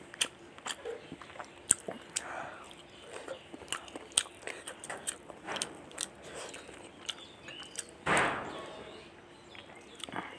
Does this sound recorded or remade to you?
recorded